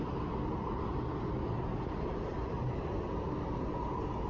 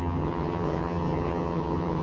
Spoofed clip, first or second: second